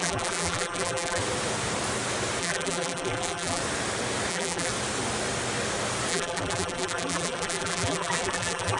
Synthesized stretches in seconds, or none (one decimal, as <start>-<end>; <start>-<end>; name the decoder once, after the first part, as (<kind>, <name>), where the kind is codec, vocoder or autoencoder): 0.0-1.2 (vocoder, BigVGAN v2); 2.4-3.6; 4.3-4.7; 6.1-8.8